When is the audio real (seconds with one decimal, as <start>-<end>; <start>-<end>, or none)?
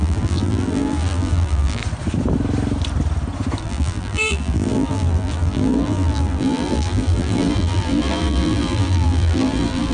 1.8-3.6